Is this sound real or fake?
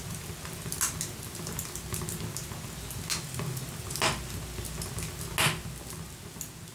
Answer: real